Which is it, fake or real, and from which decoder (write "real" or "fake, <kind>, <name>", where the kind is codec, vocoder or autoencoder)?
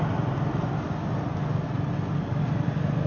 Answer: real